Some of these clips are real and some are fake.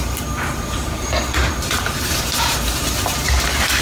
fake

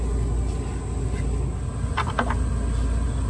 real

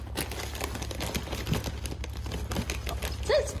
real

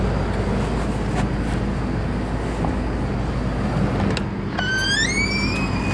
real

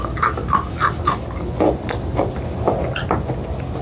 real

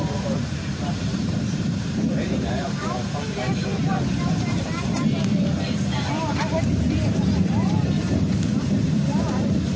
fake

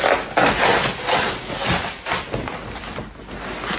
real